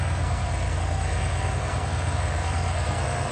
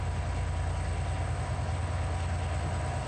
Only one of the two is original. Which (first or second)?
second